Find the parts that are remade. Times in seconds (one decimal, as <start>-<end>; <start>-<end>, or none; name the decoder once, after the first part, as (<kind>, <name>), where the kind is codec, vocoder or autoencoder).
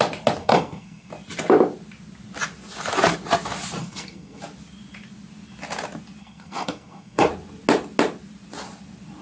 0.4-1.1 (codec, SNAC); 3.8-4.4; 6.2-7.3